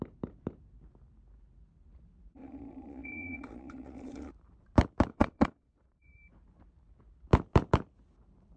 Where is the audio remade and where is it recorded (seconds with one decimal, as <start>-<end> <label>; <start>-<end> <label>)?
0.0-2.4 recorded; 2.4-4.3 remade; 4.3-5.1 recorded; 5.1-6.2 remade; 6.2-8.6 recorded